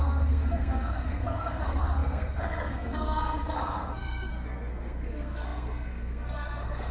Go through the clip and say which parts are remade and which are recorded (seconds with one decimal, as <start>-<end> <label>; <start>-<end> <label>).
0.0-6.9 remade